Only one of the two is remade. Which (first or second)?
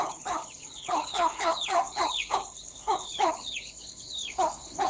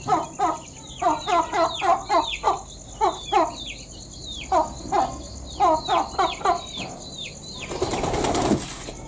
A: first